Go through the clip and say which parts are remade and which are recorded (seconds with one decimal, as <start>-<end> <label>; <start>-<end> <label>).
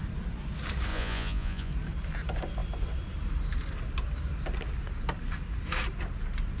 0.0-0.9 recorded; 0.9-1.7 remade; 1.7-6.6 recorded